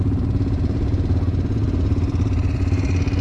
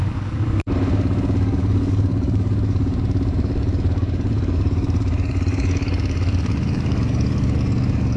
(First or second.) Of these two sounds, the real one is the first